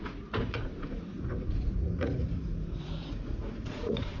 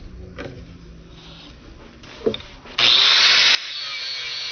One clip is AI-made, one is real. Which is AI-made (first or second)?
first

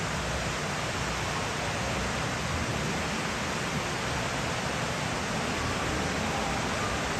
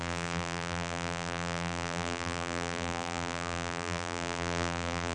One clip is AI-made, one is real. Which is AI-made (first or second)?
second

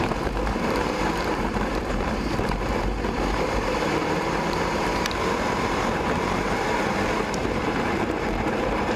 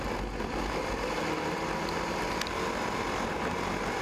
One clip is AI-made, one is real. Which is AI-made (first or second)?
first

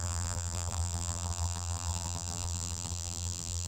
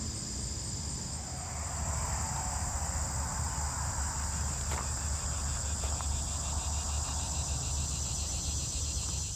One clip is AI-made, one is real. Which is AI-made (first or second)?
first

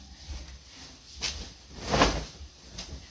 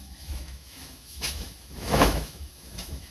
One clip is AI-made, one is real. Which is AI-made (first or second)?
second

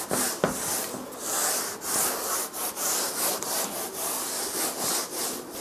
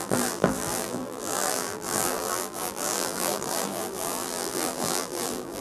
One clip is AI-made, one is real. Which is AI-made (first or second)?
second